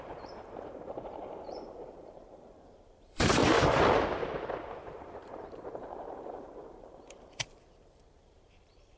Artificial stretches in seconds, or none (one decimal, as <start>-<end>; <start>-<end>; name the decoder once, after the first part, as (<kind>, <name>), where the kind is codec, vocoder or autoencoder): 0.0-3.4 (vocoder, BigVGAN v2); 4.7-9.0